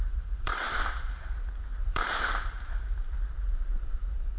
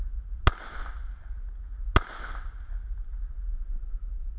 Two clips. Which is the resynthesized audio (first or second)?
first